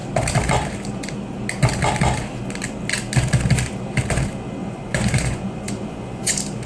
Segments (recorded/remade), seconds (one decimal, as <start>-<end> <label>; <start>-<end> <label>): 0.0-4.6 recorded; 4.6-6.3 remade; 6.3-6.7 recorded

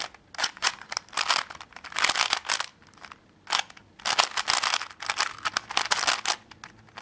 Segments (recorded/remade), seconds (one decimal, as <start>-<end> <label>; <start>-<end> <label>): 0.0-0.4 recorded; 0.4-0.9 remade; 0.9-7.0 recorded

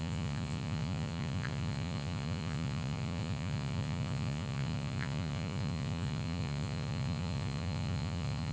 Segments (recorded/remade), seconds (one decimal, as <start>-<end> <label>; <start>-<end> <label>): 0.0-8.5 remade

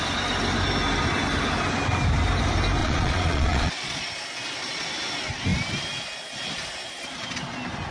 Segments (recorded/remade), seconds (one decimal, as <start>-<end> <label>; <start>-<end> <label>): 0.0-2.8 recorded; 2.8-4.1 remade; 4.1-7.9 recorded